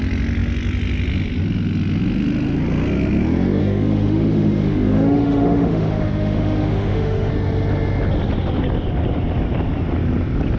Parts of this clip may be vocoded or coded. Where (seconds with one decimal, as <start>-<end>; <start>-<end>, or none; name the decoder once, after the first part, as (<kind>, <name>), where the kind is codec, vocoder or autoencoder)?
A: 3.6-7.3 (autoencoder, DAC-VAE)